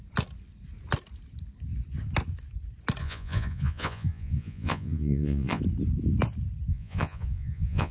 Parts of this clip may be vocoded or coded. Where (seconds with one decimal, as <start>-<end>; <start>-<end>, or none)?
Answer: 3.0-5.6; 6.7-7.9